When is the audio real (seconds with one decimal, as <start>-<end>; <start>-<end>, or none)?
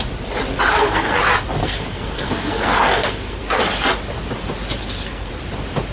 0.0-0.7; 1.2-1.6; 3.6-4.8; 5.3-5.9